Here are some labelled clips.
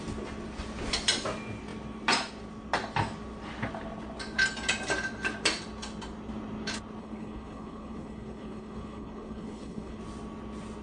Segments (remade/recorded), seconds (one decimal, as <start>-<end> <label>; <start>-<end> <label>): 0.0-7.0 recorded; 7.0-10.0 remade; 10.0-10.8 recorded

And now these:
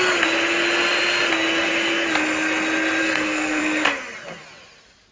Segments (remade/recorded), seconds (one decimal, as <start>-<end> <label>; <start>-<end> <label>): 0.0-3.0 recorded; 3.0-3.6 remade; 3.6-5.1 recorded

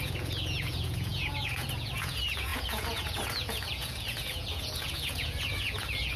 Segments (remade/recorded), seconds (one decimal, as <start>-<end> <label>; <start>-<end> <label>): 0.0-6.2 remade

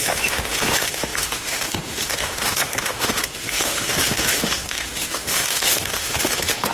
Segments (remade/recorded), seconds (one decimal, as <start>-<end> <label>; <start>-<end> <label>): 0.0-6.7 remade